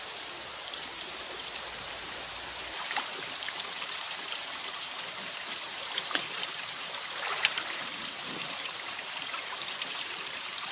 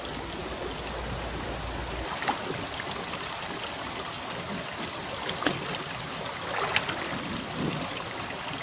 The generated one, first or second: first